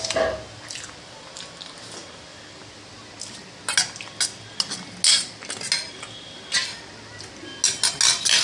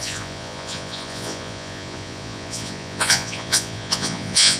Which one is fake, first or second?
second